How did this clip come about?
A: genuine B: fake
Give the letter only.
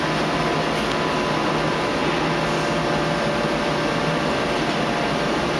A